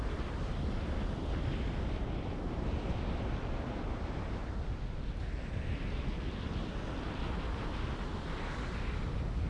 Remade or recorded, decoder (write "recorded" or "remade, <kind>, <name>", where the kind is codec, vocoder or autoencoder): recorded